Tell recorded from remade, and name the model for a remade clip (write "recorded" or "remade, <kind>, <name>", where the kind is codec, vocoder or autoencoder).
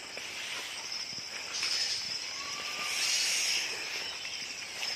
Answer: recorded